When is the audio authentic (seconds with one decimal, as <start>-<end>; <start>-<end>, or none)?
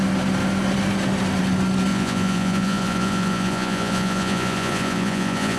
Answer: 0.0-1.9